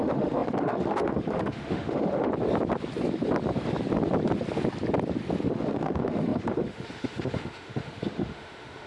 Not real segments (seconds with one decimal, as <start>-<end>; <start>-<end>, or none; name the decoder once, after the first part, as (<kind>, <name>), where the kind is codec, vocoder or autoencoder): 0.0-2.3 (autoencoder, DAC-VAE); 5.5-8.9